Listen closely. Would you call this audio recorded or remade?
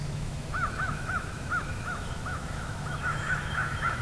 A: remade